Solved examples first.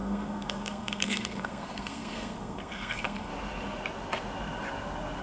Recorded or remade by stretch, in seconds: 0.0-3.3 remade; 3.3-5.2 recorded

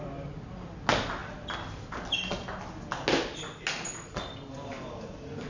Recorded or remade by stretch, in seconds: 0.0-5.5 recorded

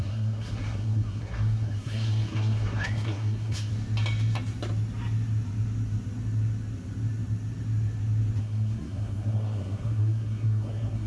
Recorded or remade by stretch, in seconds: 0.0-3.7 remade; 3.7-8.4 recorded; 8.4-11.1 remade

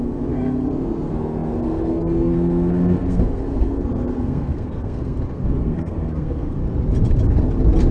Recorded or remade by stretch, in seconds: 0.0-6.6 remade; 6.6-7.9 recorded

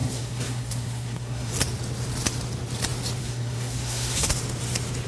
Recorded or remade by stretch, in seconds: 0.0-1.5 remade; 1.5-3.2 recorded; 3.2-4.3 remade; 4.3-5.1 recorded

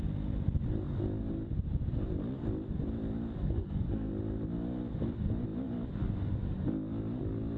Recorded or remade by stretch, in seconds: 0.0-3.6 recorded; 3.6-4.1 remade; 4.1-7.6 recorded